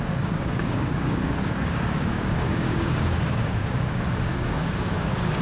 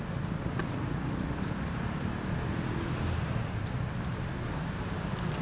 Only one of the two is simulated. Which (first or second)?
first